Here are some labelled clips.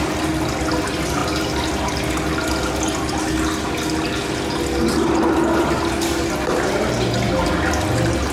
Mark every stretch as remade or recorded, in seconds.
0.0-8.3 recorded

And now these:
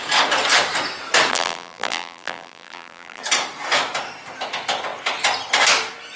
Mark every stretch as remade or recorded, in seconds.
0.0-1.3 recorded; 1.3-3.2 remade; 3.2-6.2 recorded

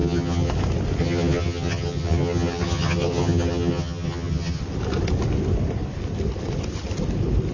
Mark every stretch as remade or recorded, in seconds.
0.0-0.5 remade; 0.5-1.0 recorded; 1.0-4.6 remade; 4.6-7.5 recorded

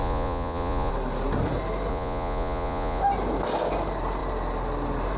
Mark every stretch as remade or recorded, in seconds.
0.0-0.9 remade; 0.9-1.9 recorded; 1.9-3.0 remade; 3.0-5.2 recorded

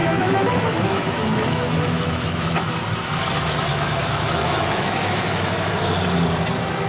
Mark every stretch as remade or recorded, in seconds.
0.0-2.7 remade; 2.7-3.7 recorded; 3.7-5.7 remade; 5.7-6.9 recorded

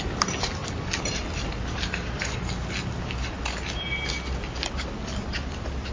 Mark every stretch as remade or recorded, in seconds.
0.0-5.9 recorded

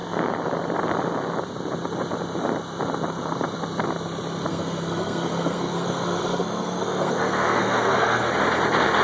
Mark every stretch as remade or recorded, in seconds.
0.0-4.5 recorded; 4.5-8.3 remade; 8.3-9.0 recorded